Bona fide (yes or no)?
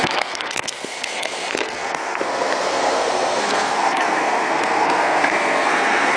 no